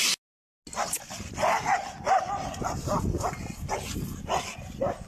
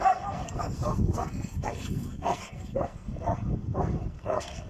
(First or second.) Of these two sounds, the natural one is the first